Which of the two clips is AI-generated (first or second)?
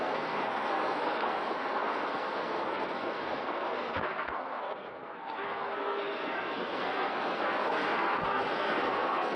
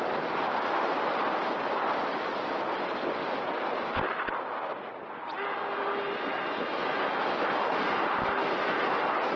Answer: first